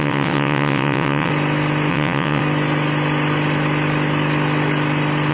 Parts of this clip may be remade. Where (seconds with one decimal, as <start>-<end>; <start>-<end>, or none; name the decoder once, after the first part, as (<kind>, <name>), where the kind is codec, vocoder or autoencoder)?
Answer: 0.0-1.3 (vocoder, WaveNeXt); 1.9-2.4